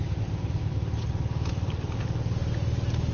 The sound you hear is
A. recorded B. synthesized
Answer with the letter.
A